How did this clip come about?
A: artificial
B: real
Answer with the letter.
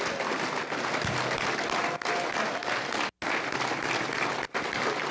B